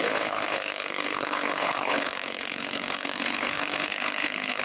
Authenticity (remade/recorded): remade